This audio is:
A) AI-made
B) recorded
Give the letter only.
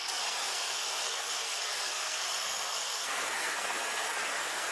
A